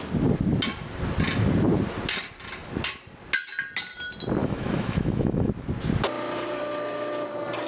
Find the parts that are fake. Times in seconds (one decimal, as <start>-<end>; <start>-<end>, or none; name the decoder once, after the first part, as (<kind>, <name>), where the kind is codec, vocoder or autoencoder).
4.4-5.5 (autoencoder, DAC-VAE)